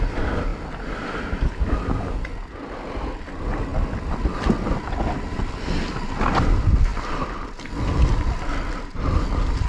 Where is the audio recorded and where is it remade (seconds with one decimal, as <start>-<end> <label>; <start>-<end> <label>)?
0.0-6.9 recorded; 6.9-9.0 remade; 9.0-9.7 recorded